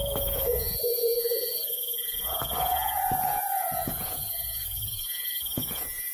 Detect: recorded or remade remade